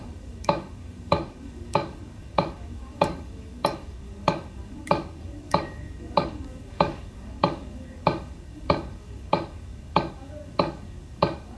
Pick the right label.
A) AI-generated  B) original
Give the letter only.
A